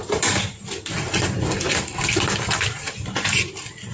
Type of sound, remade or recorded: remade